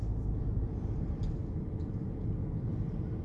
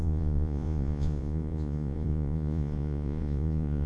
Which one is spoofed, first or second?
second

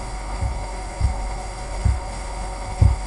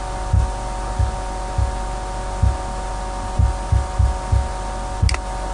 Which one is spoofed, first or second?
first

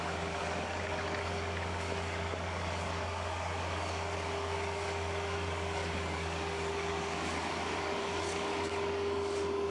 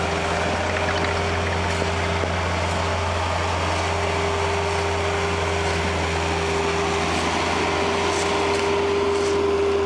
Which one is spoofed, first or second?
first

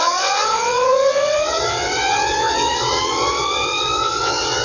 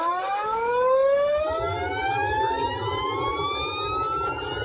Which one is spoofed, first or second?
first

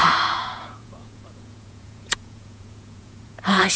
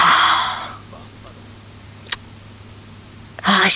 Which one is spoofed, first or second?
first